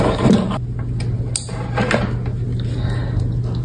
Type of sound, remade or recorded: recorded